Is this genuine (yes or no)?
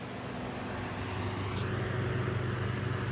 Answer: yes